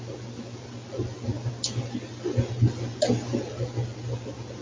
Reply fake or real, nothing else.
real